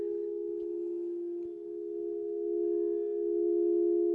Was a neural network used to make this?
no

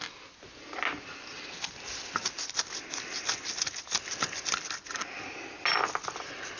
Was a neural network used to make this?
no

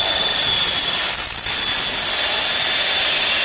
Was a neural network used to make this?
no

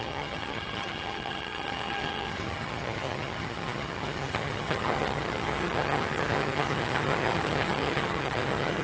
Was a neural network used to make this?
yes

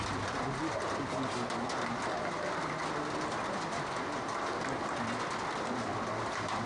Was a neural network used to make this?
no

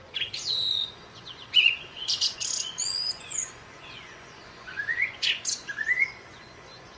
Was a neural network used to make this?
yes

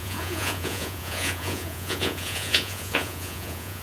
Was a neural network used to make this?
yes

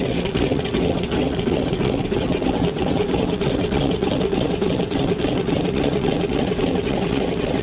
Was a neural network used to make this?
yes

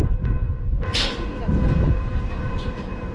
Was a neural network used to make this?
no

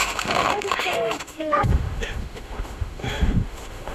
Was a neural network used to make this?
yes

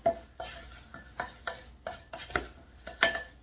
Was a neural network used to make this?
no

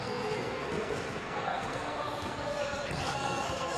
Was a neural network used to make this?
yes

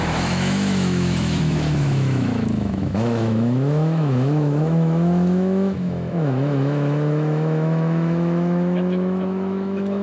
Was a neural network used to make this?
yes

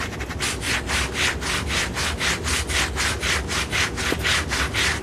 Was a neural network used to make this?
no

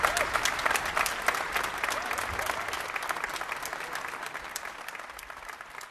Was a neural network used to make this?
no